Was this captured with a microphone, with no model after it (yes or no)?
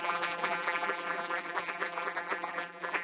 no